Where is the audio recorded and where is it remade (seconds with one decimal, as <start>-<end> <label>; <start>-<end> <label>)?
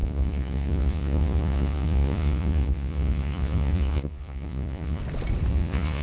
0.0-5.0 remade; 5.0-5.5 recorded; 5.5-6.0 remade